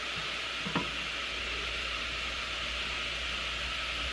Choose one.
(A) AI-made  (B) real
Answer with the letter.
B